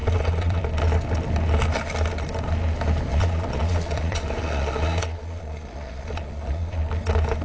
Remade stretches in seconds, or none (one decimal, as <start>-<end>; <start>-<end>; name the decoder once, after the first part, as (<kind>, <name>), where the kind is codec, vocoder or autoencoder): 0.0-0.6 (vocoder, Vocos); 3.1-6.8